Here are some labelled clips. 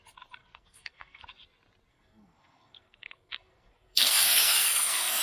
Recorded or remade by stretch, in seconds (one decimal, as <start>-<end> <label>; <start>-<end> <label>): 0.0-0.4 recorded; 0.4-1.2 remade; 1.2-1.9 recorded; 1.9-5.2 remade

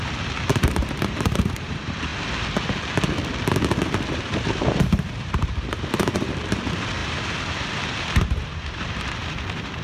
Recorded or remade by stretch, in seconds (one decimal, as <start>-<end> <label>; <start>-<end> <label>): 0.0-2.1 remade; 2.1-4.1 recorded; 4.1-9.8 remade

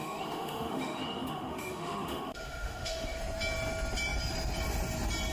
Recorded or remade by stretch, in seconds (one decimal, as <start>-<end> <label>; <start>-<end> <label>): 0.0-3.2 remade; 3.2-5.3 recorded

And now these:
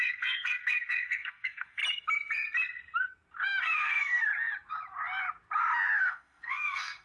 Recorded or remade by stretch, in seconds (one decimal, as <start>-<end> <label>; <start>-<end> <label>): 0.0-1.8 remade; 1.8-3.6 recorded; 3.6-4.3 remade; 4.3-6.0 recorded; 6.0-7.0 remade

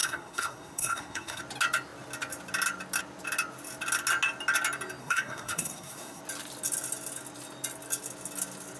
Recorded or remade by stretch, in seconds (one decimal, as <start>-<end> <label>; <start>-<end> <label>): 0.0-1.4 remade; 1.4-5.0 recorded; 5.0-6.2 remade; 6.2-8.8 recorded

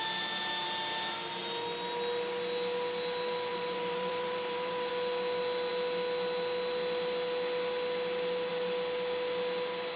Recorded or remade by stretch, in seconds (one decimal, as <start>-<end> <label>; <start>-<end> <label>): 0.0-3.5 recorded; 3.5-4.9 remade; 4.9-10.0 recorded

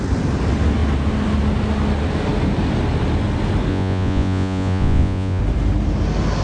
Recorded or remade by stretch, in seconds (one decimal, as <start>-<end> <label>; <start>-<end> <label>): 0.0-3.7 recorded; 3.7-5.4 remade; 5.4-6.4 recorded